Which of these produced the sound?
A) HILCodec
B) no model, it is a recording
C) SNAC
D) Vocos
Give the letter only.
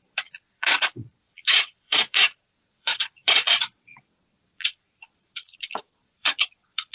D